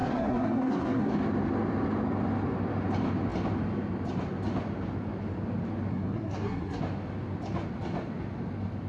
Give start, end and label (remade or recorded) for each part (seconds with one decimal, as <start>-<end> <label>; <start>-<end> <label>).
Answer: 0.0-1.1 remade; 1.1-5.9 recorded; 5.9-6.8 remade; 6.8-8.9 recorded